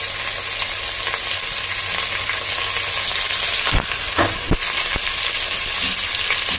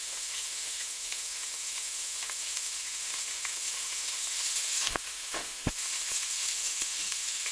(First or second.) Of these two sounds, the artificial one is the second